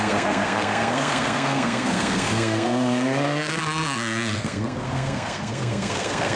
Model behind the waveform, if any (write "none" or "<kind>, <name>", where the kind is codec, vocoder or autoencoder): codec, SNAC